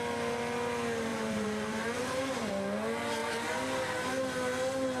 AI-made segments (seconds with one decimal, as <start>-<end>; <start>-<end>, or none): 1.1-2.5